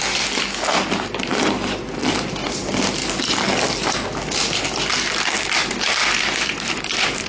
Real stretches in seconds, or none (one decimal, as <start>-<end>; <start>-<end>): 0.0-1.3; 2.1-6.0